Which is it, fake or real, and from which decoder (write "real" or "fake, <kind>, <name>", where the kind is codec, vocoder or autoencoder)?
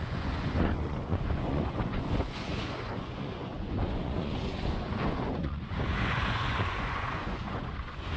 fake, vocoder, Vocos